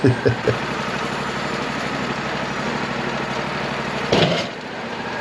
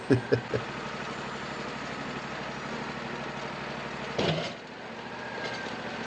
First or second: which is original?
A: second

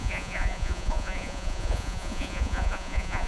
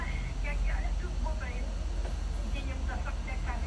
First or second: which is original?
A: second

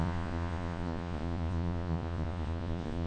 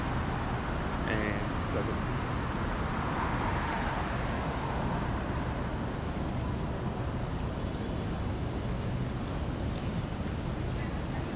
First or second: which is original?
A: second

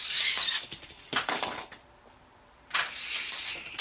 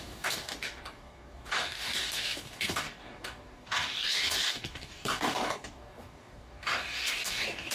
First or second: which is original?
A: first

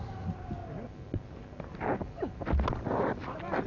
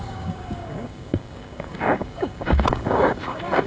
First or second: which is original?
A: first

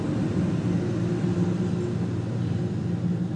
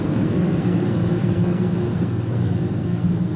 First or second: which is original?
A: first